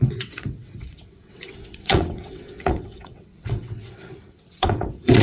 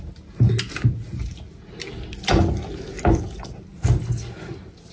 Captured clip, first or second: second